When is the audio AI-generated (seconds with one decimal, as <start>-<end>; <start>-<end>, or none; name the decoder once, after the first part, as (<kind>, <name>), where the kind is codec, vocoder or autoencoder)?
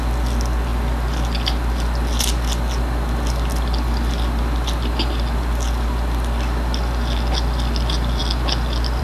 none